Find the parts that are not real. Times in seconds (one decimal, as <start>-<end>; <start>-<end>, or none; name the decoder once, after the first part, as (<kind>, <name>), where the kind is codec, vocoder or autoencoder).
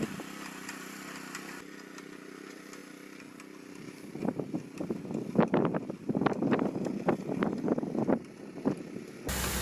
0.0-2.8 (vocoder, BigVGAN v2); 5.9-9.6